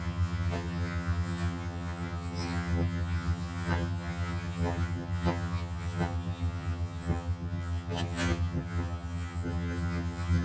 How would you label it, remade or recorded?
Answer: remade